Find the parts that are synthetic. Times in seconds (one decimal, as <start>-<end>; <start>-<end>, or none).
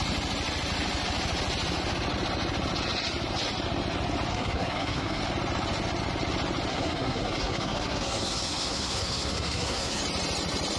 4.3-5.2; 6.7-10.0